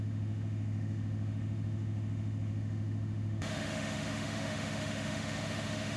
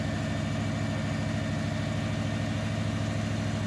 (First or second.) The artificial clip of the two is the first